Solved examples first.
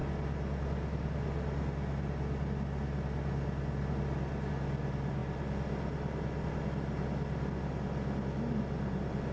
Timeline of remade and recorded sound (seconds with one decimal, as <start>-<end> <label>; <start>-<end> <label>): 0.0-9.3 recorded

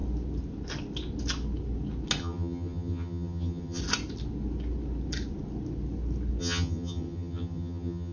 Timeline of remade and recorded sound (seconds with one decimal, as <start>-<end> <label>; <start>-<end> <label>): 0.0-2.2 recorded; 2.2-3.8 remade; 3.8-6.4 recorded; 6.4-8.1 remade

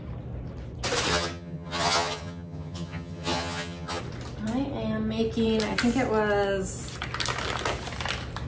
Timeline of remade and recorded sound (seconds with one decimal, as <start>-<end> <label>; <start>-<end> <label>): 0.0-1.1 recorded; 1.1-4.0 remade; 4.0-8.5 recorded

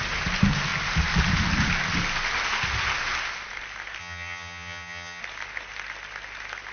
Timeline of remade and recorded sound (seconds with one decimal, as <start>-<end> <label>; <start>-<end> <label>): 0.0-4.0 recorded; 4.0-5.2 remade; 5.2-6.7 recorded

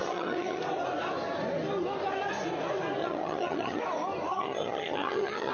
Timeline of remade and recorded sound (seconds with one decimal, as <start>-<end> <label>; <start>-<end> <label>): 0.0-0.6 remade; 0.6-3.0 recorded; 3.0-3.8 remade; 3.8-4.3 recorded; 4.3-5.5 remade

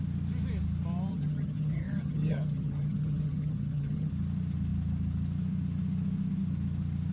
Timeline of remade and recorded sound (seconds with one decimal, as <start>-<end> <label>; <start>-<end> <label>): 0.0-1.1 recorded; 1.1-4.1 remade; 4.1-7.1 recorded